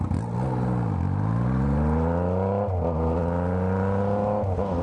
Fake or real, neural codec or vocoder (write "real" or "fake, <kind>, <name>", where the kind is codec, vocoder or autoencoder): real